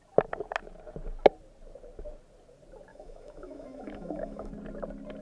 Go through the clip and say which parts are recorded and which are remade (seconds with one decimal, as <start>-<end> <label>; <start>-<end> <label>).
0.0-2.9 recorded; 2.9-4.5 remade; 4.5-5.2 recorded